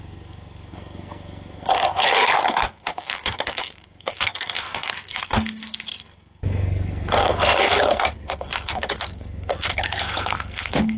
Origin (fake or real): fake